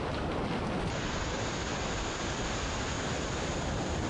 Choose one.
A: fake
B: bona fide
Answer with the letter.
B